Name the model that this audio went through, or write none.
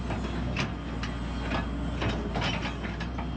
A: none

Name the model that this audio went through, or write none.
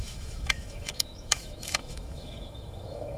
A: autoencoder, DAC-VAE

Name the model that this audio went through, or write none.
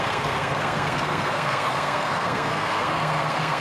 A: codec, SNAC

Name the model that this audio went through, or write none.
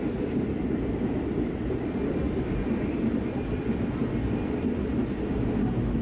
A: none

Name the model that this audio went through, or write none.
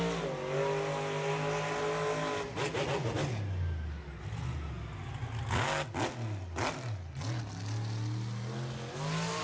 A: none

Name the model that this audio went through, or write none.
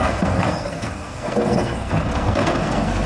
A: codec, SNAC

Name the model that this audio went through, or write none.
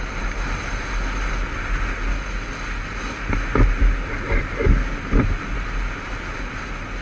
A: none